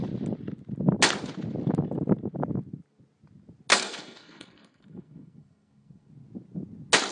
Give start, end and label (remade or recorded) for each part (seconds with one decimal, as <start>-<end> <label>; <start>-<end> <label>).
0.0-3.7 recorded; 3.7-6.1 remade; 6.1-7.1 recorded